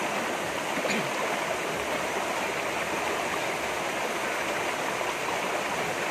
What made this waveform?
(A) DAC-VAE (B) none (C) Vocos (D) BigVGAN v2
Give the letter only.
B